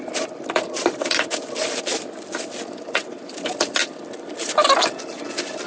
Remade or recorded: remade